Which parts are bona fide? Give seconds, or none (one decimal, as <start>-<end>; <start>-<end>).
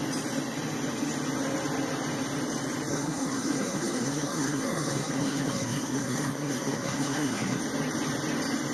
0.0-2.9; 7.6-8.7